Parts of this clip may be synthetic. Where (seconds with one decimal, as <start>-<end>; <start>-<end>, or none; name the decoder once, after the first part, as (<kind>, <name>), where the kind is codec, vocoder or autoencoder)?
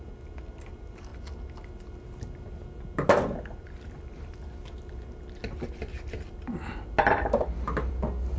none